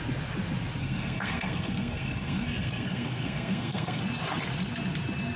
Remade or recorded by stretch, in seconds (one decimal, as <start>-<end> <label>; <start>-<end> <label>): 0.0-0.8 recorded; 0.8-4.0 remade; 4.0-5.4 recorded